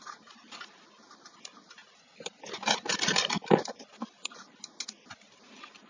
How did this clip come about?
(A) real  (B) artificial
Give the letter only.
A